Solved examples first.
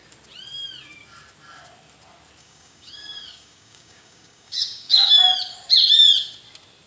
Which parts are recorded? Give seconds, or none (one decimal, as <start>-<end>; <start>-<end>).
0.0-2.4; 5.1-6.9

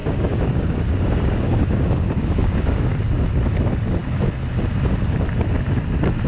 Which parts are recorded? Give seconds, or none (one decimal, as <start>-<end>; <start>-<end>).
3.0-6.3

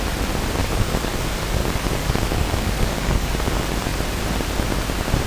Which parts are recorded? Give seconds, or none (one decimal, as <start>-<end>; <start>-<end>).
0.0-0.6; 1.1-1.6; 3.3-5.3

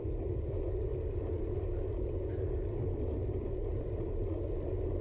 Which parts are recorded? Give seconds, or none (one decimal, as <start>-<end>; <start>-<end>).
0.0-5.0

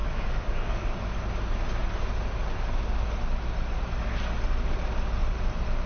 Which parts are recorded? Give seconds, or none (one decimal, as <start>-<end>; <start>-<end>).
1.2-5.9

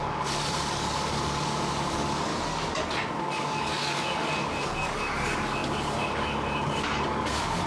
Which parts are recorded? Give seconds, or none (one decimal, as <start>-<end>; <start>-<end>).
2.3-3.2